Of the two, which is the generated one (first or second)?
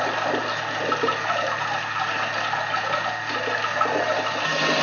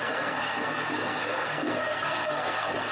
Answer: second